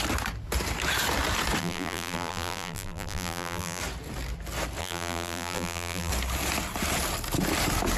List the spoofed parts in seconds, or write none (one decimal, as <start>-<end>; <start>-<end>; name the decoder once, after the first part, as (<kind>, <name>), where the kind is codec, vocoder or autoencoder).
1.6-3.8 (vocoder, BigVGAN v2); 4.8-6.1